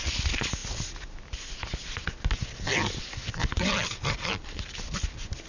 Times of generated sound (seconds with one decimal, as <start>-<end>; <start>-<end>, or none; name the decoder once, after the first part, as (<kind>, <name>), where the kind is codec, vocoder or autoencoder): none